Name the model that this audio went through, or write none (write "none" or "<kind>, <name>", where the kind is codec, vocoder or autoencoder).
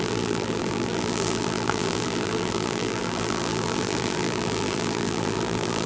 vocoder, BigVGAN v2